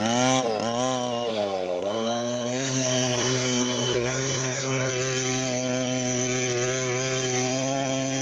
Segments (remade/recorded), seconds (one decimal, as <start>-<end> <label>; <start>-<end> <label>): 0.0-1.3 recorded; 1.3-4.9 remade; 4.9-8.2 recorded